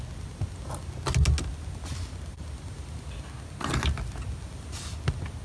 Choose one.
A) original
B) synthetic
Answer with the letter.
A